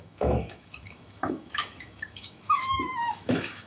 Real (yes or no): no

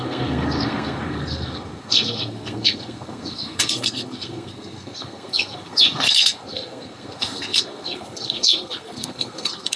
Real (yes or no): no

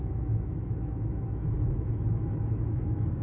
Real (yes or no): no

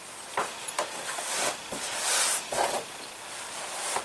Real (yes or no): yes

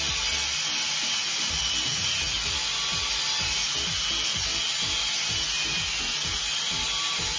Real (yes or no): yes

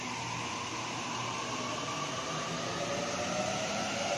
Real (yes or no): no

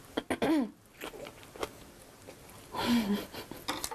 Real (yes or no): yes